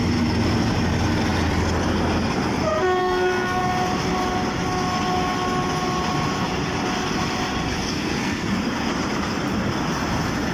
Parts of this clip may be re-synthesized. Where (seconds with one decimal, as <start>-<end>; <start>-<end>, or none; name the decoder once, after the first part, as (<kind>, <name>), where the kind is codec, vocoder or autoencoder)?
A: 3.0-3.6 (codec, SNAC); 7.8-8.5